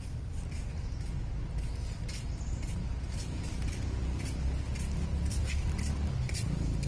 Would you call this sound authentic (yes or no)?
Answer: yes